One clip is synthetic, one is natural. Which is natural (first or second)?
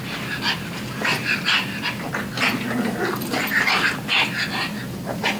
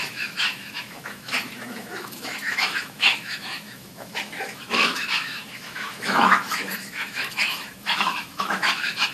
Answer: first